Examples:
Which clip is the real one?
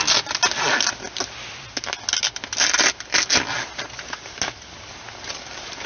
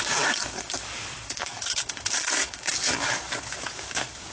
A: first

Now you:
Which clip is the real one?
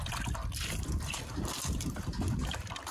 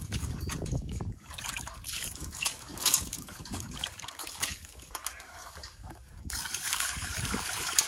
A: first